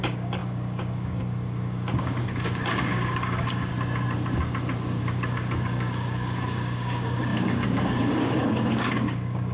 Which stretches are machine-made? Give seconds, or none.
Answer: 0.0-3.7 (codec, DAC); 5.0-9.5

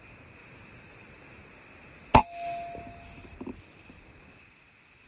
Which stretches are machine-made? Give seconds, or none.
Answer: none

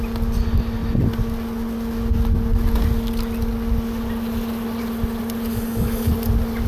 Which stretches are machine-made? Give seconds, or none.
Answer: 5.5-6.1 (codec, DAC)

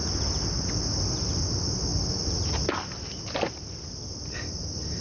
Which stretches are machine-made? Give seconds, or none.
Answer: none

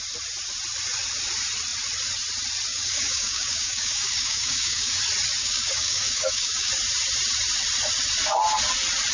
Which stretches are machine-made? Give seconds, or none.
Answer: 2.7-5.0 (codec, DAC); 5.4-6.7

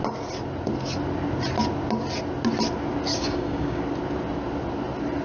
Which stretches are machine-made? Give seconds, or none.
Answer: 3.1-3.8 (codec, DAC)